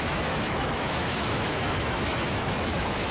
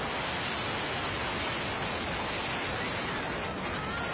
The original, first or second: second